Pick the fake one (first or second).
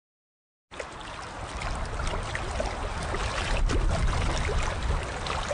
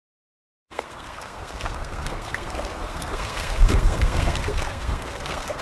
second